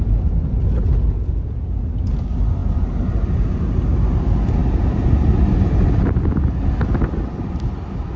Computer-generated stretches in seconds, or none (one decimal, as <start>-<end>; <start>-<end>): none

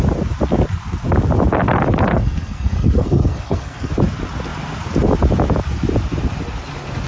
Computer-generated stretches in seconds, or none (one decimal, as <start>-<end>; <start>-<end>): 2.1-3.9

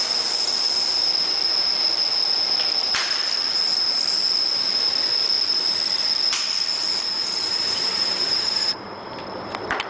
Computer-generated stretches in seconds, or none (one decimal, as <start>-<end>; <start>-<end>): 7.2-9.2

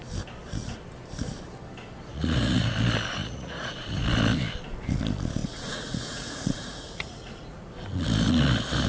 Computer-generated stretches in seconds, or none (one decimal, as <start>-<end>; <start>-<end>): 2.1-2.7; 3.2-4.0; 5.4-7.7

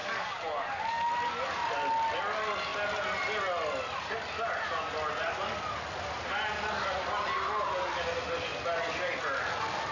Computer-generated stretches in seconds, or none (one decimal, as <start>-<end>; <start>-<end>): 0.0-1.1

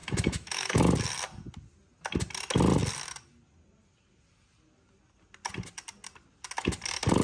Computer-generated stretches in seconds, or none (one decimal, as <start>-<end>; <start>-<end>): 0.0-0.9

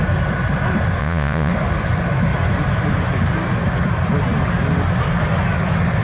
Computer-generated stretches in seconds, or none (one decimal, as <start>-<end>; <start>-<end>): 1.0-1.5

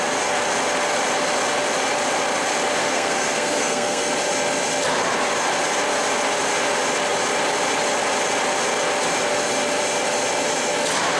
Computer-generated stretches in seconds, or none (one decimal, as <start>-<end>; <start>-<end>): 2.8-4.1